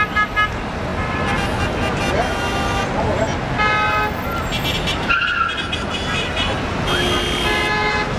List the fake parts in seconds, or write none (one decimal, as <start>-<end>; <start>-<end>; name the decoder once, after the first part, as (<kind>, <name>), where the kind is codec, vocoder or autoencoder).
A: none